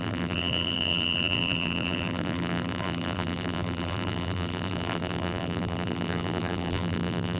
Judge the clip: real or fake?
fake